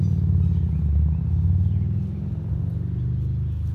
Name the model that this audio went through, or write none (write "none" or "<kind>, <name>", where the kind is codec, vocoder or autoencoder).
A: none